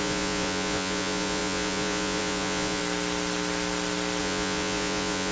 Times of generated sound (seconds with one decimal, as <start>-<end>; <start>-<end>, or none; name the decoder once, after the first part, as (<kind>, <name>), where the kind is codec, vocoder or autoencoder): 0.0-2.8 (vocoder, Vocos); 4.2-5.3